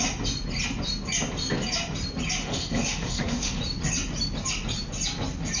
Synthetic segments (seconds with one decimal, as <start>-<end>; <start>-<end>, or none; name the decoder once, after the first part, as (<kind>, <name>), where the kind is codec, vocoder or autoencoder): 2.4-3.6 (autoencoder, DAC-VAE)